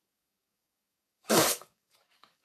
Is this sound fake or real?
fake